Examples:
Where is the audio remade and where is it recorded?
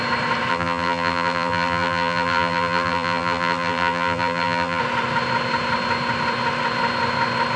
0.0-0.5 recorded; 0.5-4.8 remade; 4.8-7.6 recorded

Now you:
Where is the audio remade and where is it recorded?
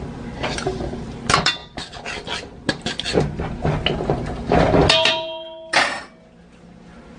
0.0-7.2 recorded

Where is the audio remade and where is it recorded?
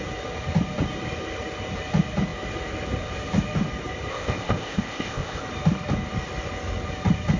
0.0-4.1 recorded; 4.1-5.4 remade; 5.4-7.4 recorded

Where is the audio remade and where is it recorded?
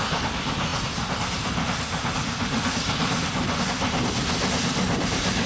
0.0-5.5 recorded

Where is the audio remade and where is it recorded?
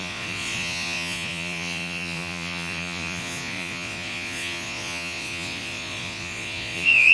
0.0-7.1 remade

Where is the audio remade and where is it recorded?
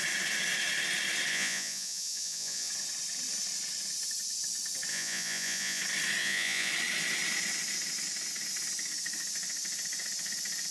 0.0-1.3 recorded; 1.3-2.7 remade; 2.7-4.9 recorded; 4.9-5.8 remade; 5.8-6.2 recorded; 6.2-6.7 remade; 6.7-10.7 recorded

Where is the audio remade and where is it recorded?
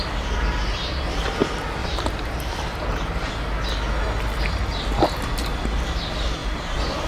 0.0-1.8 recorded; 1.8-3.3 remade; 3.3-6.4 recorded; 6.4-7.1 remade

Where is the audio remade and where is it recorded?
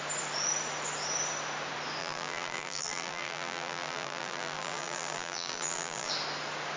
0.0-2.0 recorded; 2.0-6.1 remade; 6.1-6.8 recorded